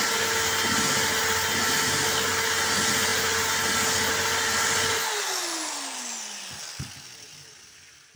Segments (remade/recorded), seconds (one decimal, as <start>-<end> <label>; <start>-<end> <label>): 0.0-8.2 recorded

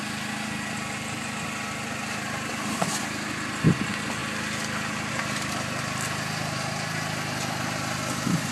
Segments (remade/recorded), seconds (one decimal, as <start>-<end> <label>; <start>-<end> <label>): 0.0-8.5 recorded

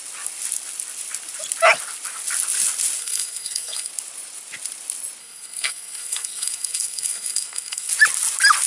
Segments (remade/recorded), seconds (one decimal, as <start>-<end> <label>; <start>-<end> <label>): 0.0-3.0 recorded; 3.0-3.9 remade; 3.9-5.2 recorded; 5.2-7.9 remade; 7.9-8.7 recorded

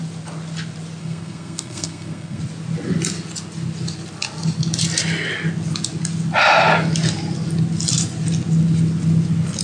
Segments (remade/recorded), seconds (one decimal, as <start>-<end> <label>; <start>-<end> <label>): 0.0-1.0 recorded; 1.0-2.4 remade; 2.4-9.6 recorded

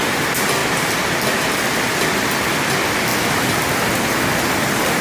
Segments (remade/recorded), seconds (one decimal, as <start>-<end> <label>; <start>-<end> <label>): 0.0-5.0 recorded

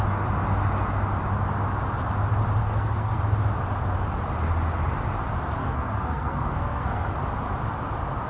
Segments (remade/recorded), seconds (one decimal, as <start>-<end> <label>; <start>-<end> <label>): 0.0-2.6 recorded; 2.6-3.2 remade; 3.2-5.6 recorded; 5.6-7.1 remade; 7.1-8.3 recorded